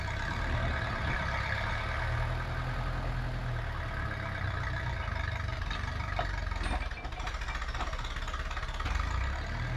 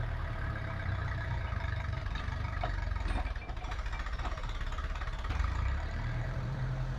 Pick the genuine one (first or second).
first